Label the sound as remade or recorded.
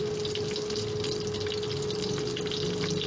recorded